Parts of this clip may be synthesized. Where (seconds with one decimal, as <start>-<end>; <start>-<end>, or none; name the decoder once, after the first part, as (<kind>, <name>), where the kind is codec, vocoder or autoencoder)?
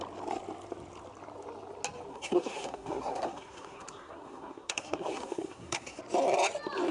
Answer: 2.1-6.0 (codec, SNAC)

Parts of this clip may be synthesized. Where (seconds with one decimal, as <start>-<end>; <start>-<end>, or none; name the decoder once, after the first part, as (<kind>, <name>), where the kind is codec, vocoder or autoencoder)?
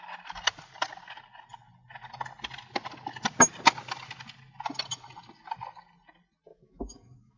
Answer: 6.5-7.4 (autoencoder, DAC-VAE)